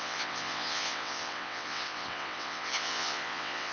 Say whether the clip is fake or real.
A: fake